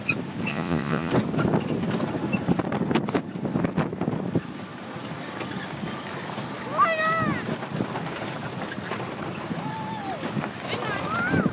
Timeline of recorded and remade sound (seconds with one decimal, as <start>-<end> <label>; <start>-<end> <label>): 0.0-0.5 recorded; 0.5-1.1 remade; 1.1-11.5 recorded